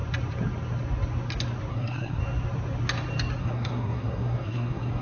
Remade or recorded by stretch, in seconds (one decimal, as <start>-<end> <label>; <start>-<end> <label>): 0.0-1.7 recorded; 1.7-2.2 remade; 2.2-3.4 recorded; 3.4-5.0 remade